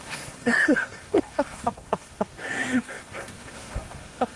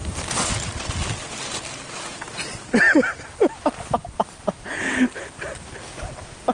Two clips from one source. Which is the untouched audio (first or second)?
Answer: second